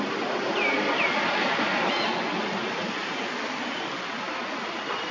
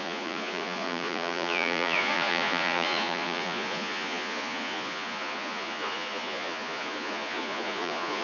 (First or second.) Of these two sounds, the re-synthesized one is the second